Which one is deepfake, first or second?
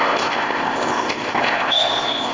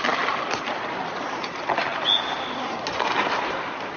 first